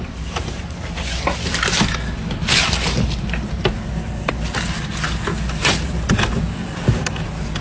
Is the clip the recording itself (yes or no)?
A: yes